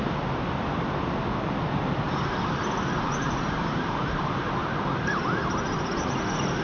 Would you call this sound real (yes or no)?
yes